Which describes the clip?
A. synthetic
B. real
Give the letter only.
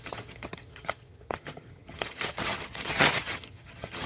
A